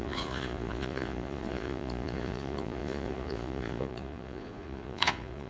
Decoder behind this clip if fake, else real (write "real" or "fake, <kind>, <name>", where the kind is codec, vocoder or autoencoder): fake, vocoder, Vocos